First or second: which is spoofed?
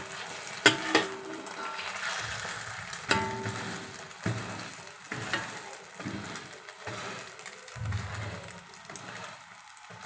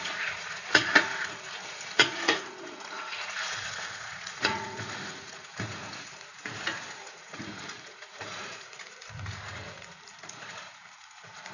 second